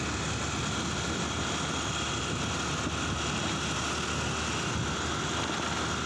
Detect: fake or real real